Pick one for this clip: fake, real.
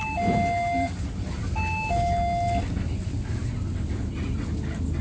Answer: real